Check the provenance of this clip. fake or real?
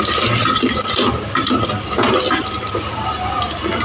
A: real